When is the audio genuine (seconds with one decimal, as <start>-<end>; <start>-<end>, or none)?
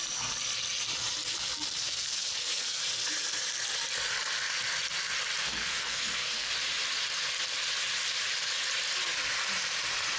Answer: 0.0-1.8; 2.8-5.4; 6.5-10.2